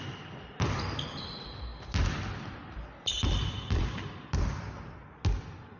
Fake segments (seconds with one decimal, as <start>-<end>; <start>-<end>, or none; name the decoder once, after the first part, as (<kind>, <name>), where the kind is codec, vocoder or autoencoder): none